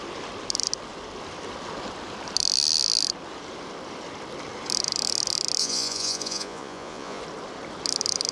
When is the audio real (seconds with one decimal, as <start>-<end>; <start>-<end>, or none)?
0.0-5.6; 7.2-8.3